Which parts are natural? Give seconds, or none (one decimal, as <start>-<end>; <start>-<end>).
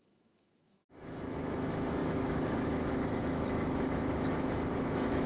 none